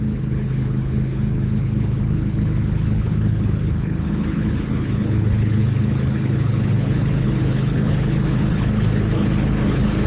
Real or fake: fake